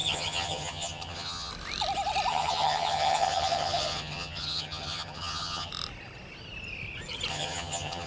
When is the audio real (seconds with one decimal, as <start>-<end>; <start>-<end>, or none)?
1.5-2.3; 5.7-7.3